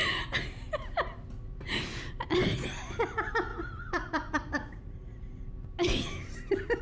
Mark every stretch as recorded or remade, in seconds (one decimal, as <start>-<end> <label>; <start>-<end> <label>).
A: 0.0-3.5 recorded; 3.5-5.2 remade; 5.2-6.8 recorded